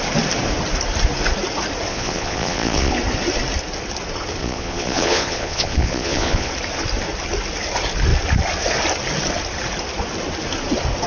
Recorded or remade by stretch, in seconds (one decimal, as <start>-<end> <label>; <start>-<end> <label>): 0.0-1.9 recorded; 1.9-2.9 remade; 2.9-4.4 recorded; 4.4-6.5 remade; 6.5-11.1 recorded